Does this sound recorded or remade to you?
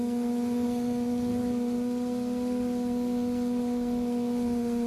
remade